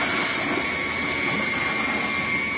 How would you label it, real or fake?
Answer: real